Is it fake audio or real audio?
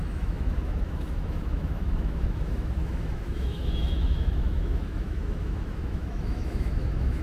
fake